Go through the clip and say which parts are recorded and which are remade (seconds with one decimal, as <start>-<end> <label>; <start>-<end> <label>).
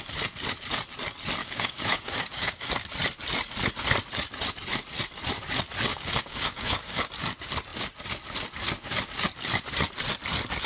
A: 0.0-1.4 recorded; 1.4-2.7 remade; 2.7-5.9 recorded; 5.9-7.1 remade; 7.1-10.7 recorded